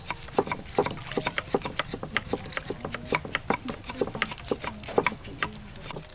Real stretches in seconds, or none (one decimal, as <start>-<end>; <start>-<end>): 0.0-6.1